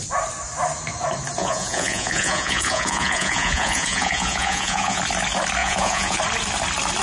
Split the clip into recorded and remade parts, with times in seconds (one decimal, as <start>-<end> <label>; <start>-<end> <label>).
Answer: 0.0-1.4 recorded; 1.4-5.0 remade; 5.0-5.6 recorded; 5.6-6.2 remade; 6.2-7.0 recorded